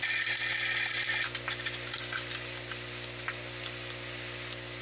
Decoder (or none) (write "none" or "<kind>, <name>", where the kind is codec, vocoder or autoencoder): none